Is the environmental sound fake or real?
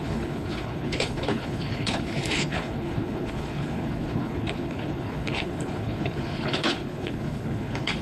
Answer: fake